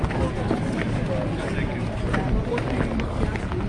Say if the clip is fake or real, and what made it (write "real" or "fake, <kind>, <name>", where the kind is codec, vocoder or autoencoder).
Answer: real